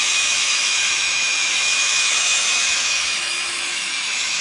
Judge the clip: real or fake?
fake